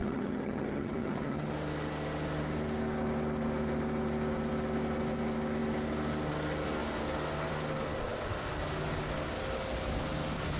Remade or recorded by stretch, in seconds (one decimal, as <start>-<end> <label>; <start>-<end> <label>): 0.0-1.5 remade; 1.5-10.6 recorded